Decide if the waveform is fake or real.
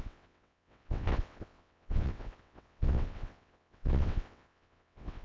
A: fake